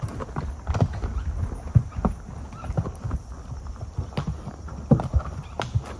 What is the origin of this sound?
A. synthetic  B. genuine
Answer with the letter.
B